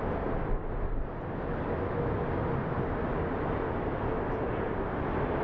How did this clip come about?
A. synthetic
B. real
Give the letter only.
B